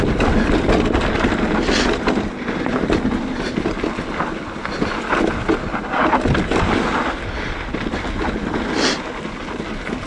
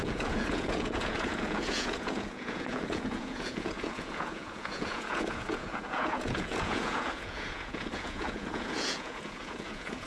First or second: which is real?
first